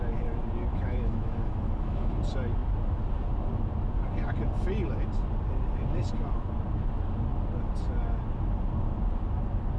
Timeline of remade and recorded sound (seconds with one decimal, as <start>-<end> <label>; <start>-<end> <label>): 0.0-0.7 recorded; 0.7-2.1 remade; 2.1-9.8 recorded